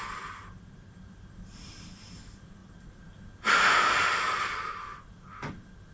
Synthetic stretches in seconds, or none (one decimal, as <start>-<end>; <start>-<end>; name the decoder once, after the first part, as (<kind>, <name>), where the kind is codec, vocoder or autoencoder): none